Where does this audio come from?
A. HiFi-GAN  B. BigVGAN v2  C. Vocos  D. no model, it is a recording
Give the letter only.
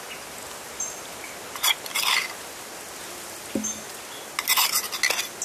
D